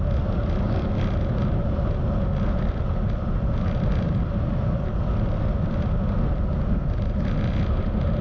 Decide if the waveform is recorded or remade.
recorded